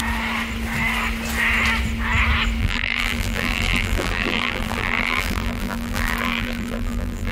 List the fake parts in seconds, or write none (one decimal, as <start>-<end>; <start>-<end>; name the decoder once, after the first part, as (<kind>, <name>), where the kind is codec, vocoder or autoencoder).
2.6-7.3 (vocoder, BigVGAN v2)